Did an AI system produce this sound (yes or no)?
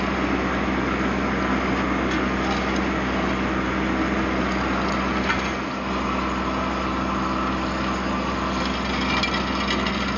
no